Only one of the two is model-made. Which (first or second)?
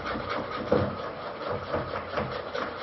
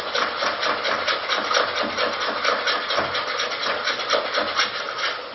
first